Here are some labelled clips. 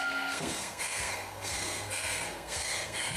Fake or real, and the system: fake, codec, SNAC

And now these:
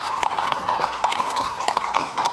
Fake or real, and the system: fake, codec, SNAC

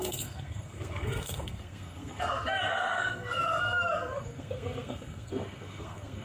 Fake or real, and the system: fake, codec, SNAC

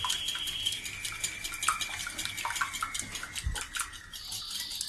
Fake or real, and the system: real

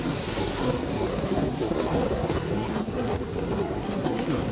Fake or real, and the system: fake, codec, SNAC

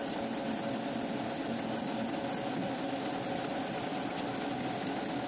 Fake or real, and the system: real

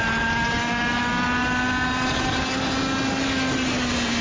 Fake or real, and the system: real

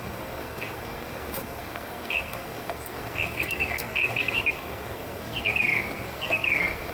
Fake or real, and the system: fake, codec, SNAC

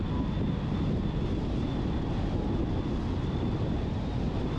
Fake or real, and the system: real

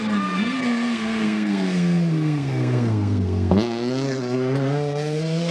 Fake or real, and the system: fake, codec, SNAC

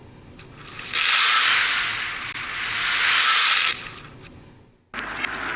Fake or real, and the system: real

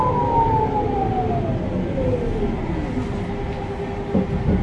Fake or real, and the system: real